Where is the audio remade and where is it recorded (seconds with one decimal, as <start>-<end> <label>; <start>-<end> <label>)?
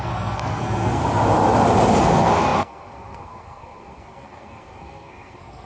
0.0-1.0 remade; 1.0-2.1 recorded; 2.1-5.7 remade